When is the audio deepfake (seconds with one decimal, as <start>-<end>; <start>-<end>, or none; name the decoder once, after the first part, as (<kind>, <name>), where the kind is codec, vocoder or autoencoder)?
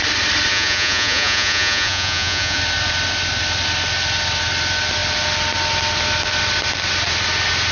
0.5-2.6 (vocoder, Vocos)